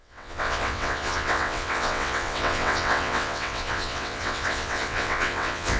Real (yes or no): no